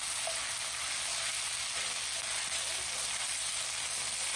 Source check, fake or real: real